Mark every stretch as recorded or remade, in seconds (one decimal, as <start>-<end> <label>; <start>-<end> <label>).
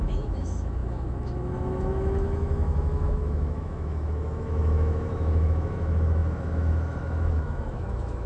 0.0-8.3 remade